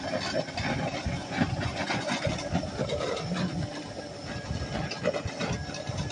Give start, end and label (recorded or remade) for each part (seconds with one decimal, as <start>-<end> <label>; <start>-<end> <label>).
0.0-1.2 recorded; 1.2-2.3 remade; 2.3-6.1 recorded